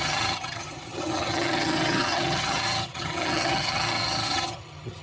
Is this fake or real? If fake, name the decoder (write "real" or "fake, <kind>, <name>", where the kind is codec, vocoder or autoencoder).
fake, vocoder, HiFi-GAN